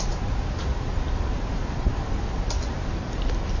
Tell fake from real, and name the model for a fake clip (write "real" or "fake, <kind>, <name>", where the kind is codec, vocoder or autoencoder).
real